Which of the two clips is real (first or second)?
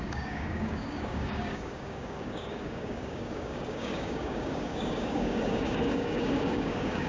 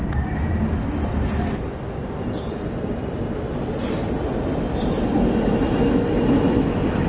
second